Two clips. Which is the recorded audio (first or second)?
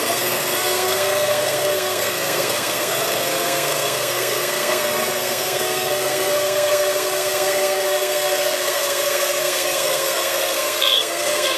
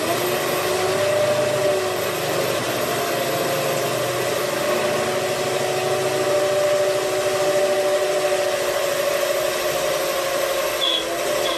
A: second